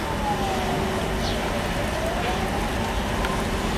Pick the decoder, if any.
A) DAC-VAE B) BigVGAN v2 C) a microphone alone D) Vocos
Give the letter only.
C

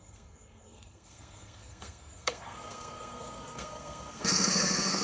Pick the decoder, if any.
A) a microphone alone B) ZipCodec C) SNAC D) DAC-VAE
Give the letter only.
C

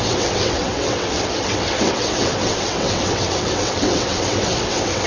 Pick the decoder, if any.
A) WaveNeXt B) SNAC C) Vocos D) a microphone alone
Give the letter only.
A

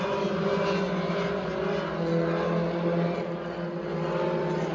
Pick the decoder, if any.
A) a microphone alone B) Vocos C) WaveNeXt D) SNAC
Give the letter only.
A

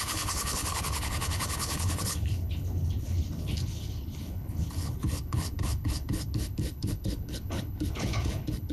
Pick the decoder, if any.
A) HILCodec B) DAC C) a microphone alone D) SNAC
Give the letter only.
A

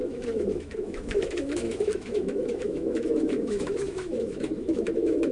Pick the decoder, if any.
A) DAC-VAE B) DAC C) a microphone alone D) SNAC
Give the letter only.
A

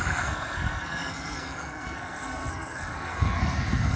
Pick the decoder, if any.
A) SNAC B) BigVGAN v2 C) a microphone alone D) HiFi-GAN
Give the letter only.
A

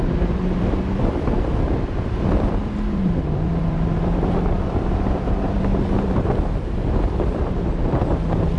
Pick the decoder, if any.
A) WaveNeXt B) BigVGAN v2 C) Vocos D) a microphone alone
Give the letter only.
B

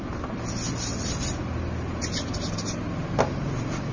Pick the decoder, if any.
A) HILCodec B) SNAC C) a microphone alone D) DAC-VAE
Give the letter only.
C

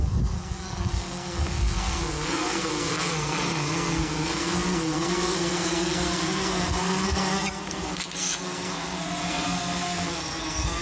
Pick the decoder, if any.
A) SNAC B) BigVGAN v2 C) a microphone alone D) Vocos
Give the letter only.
A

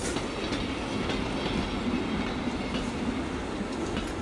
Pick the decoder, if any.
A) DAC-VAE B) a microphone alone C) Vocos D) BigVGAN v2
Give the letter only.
B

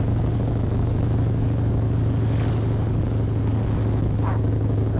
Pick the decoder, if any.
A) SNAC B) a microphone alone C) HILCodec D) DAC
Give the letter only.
D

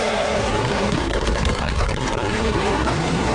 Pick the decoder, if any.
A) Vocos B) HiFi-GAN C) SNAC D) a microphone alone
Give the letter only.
C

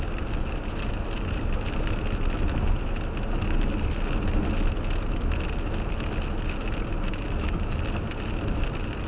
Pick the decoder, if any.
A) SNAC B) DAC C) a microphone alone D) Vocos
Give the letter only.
C